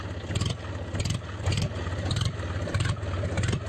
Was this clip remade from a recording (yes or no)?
no